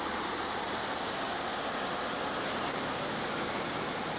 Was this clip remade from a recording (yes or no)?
no